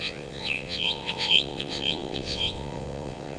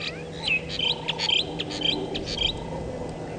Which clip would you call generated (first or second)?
first